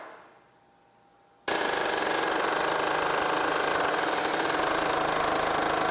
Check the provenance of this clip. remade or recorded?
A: recorded